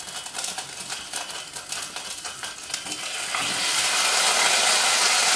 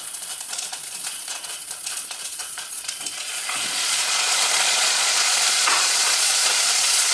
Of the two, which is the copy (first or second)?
second